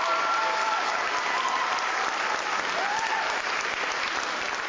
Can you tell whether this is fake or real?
fake